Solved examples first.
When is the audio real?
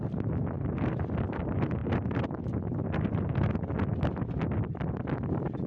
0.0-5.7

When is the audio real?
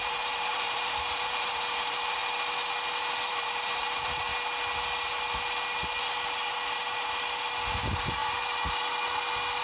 2.2-3.0; 4.3-7.7; 8.2-9.6